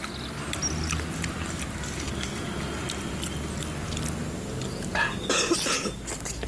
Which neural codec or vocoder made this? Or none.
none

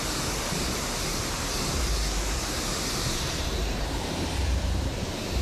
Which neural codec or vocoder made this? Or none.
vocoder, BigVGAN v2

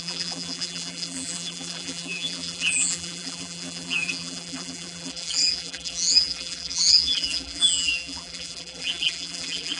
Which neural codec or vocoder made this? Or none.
vocoder, BigVGAN v2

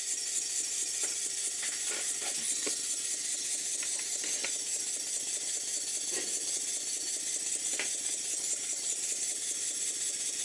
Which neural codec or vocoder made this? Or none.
vocoder, BigVGAN v2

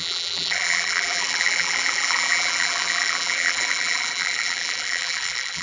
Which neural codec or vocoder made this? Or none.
vocoder, BigVGAN v2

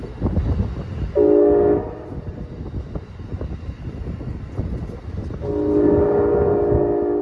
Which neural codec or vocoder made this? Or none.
none